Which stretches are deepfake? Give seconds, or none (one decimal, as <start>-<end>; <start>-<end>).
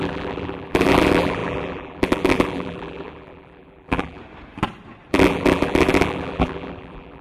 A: 0.0-4.2; 5.1-7.2